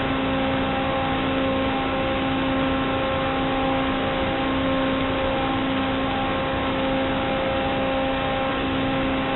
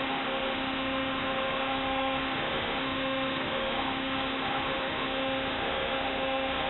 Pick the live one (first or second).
first